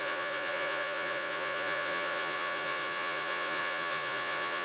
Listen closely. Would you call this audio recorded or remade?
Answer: remade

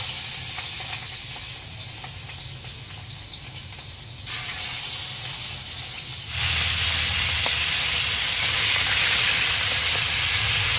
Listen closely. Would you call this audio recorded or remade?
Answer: recorded